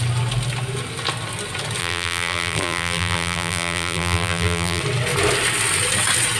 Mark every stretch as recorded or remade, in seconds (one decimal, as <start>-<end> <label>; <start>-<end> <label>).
0.0-1.8 recorded; 1.8-4.8 remade; 4.8-6.4 recorded